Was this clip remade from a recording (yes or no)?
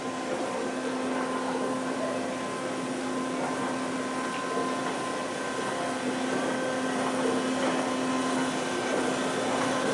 no